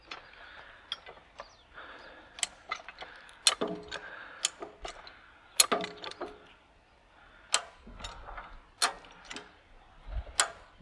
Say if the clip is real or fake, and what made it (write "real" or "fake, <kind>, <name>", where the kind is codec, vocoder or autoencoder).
real